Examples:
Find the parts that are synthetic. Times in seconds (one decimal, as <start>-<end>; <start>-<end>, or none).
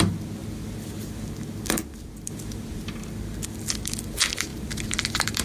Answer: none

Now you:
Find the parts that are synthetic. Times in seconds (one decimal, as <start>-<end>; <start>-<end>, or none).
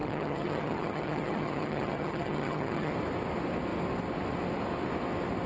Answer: 0.0-2.9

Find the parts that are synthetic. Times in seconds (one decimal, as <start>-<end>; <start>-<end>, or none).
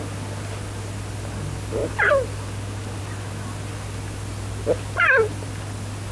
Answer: none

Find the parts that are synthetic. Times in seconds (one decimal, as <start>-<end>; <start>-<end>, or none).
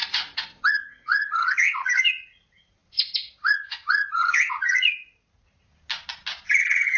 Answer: 0.0-5.7; 6.5-7.0